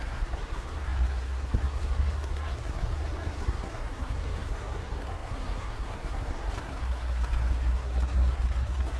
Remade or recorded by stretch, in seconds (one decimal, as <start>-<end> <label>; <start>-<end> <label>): 0.0-9.0 remade